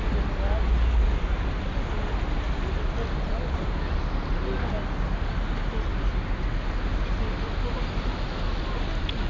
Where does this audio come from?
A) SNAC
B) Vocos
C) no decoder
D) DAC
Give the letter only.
C